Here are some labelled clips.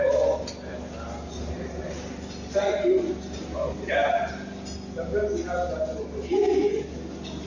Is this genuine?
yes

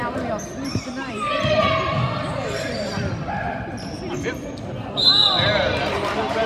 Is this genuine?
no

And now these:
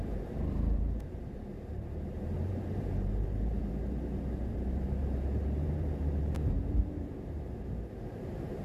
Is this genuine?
no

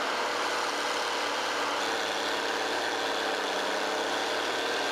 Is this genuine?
yes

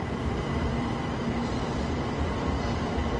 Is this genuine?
yes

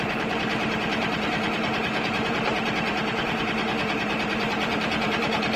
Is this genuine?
no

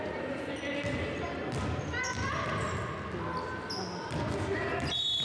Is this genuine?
yes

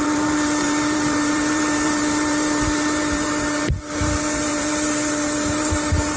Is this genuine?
no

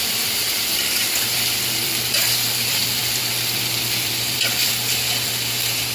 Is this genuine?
no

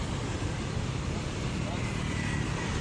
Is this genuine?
no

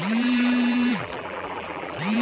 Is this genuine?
no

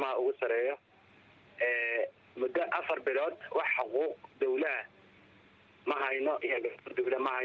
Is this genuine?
yes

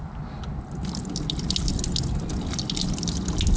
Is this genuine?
yes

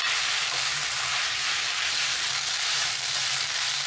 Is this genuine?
no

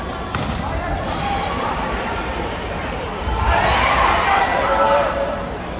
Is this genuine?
no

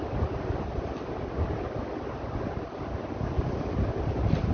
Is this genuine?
yes